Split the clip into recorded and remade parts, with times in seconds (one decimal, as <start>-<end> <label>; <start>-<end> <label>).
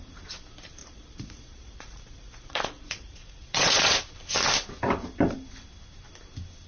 0.0-0.8 recorded; 0.8-4.0 remade; 4.0-6.7 recorded